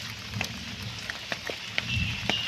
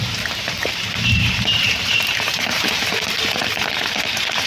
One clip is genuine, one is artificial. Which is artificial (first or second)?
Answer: second